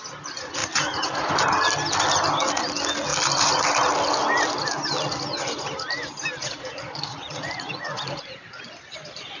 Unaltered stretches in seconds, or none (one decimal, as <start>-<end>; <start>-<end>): 0.0-0.6; 1.3-6.4; 8.6-9.4